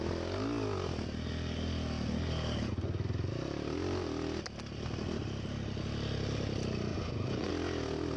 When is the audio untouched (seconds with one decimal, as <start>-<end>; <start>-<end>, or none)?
0.0-6.9; 7.5-8.2